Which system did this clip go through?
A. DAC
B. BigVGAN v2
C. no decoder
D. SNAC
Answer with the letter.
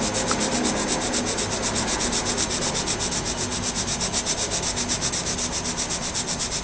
C